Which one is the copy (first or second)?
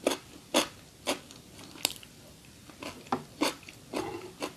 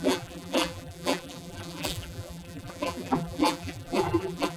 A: second